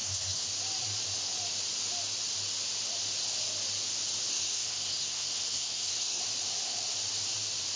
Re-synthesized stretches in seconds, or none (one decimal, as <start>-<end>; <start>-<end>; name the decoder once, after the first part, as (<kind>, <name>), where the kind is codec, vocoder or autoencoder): 0.0-0.5 (codec, SNAC); 4.3-6.2